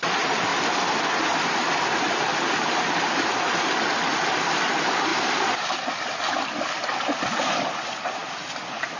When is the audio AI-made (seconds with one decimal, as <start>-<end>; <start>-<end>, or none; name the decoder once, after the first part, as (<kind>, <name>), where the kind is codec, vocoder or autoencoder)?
0.0-0.5 (vocoder, BigVGAN v2); 1.7-9.0